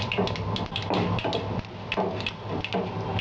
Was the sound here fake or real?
real